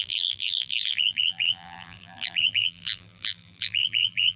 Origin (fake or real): fake